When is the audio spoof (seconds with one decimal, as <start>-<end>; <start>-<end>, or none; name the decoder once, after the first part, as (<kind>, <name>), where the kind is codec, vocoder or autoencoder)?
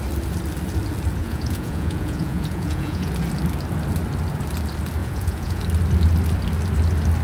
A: 1.2-3.1 (vocoder, Vocos); 5.0-5.6